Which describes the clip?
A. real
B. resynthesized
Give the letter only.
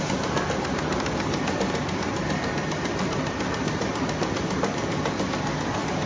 A